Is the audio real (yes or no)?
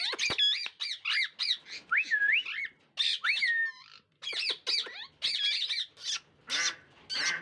yes